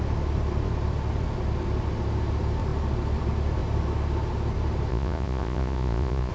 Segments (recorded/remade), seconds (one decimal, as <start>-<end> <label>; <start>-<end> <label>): 0.0-4.9 recorded; 4.9-6.3 remade